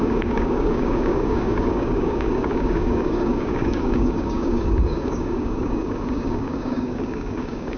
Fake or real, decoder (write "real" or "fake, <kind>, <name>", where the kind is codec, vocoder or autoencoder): fake, codec, DAC